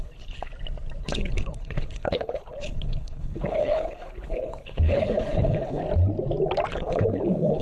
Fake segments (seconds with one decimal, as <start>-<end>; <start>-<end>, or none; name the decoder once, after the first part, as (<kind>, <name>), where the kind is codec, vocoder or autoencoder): 0.0-0.5 (codec, HILCodec); 1.0-5.8; 6.7-7.6